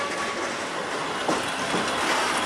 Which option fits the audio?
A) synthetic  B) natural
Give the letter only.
B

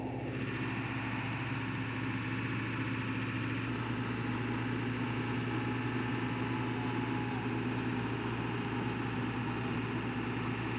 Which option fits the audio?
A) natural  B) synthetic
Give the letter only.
A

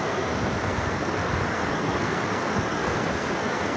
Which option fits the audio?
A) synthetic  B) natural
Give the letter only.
A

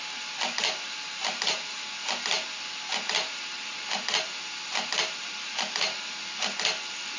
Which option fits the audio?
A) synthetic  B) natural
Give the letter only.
B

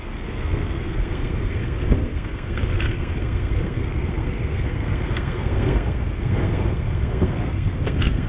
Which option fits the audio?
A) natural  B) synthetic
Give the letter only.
B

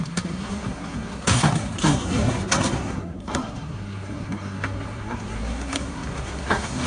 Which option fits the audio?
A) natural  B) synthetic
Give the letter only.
B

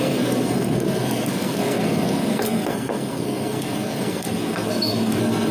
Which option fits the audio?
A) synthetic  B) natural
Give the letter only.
A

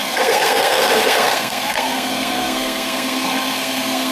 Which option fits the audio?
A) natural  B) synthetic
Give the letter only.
B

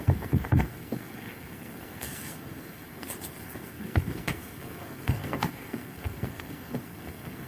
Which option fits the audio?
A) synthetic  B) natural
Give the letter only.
A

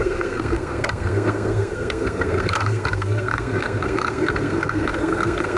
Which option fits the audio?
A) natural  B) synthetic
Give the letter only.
B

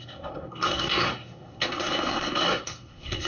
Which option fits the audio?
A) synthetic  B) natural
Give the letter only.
A